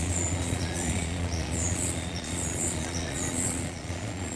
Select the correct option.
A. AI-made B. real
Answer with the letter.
A